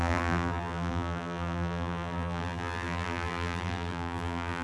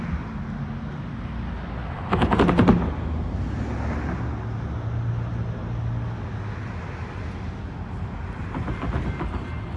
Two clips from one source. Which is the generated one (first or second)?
first